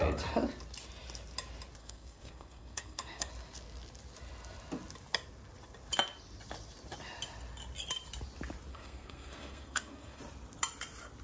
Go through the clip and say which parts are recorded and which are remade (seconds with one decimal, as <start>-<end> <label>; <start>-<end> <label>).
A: 0.0-1.8 recorded; 1.8-3.3 remade; 3.3-8.7 recorded; 8.7-10.2 remade; 10.2-11.2 recorded